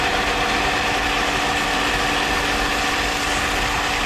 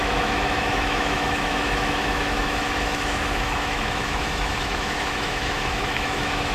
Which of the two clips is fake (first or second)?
second